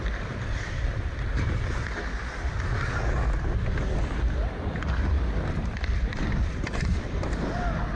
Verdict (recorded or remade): remade